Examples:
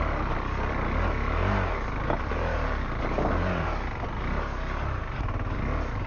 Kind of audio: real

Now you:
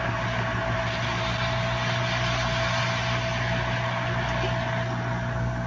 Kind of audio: real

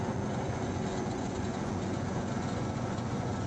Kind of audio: fake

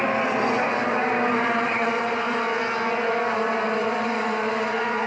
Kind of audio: fake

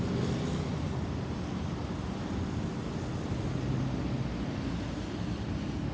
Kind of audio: real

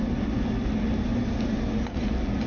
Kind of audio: real